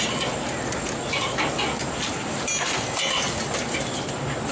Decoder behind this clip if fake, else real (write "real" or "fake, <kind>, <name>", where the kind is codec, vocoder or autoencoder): real